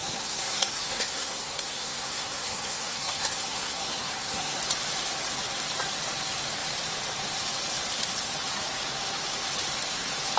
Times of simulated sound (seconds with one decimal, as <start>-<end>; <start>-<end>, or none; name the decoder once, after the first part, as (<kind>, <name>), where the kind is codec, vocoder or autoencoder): 0.0-4.6 (codec, SNAC)